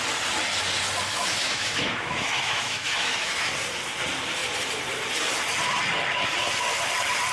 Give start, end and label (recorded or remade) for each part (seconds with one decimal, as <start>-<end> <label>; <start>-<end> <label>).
0.0-1.1 recorded; 1.1-3.5 remade; 3.5-7.3 recorded